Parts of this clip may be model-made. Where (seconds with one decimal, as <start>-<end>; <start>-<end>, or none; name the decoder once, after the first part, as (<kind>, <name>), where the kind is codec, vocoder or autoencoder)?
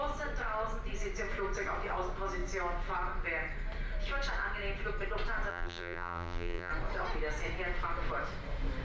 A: 5.5-6.7 (vocoder, BigVGAN v2)